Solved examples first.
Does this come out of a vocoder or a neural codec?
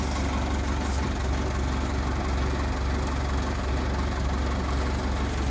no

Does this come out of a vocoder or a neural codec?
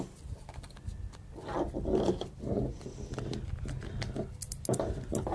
no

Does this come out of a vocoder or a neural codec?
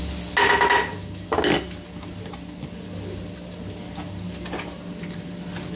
no